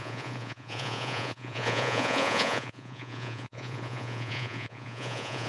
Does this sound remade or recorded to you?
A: remade